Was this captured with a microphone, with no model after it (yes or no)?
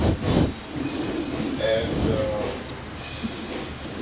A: yes